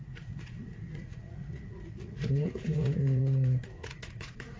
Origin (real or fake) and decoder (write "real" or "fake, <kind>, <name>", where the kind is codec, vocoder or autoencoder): fake, vocoder, Vocos